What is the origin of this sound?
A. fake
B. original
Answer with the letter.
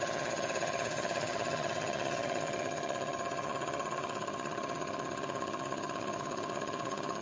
A